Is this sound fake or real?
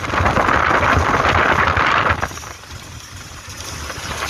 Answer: real